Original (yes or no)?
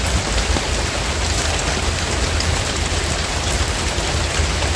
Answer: yes